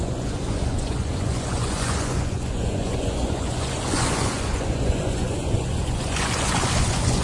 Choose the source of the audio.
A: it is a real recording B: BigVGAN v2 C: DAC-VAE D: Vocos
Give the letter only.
D